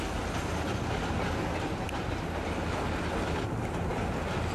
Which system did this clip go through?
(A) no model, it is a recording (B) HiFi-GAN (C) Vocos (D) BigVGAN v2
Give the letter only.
A